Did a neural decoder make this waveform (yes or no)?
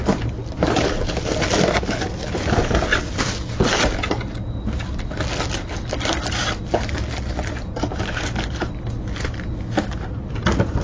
no